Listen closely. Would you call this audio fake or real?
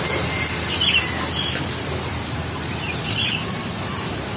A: real